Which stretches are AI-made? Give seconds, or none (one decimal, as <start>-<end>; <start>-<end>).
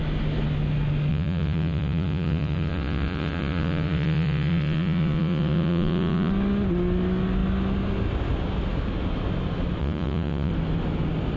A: 1.1-6.3; 9.8-10.5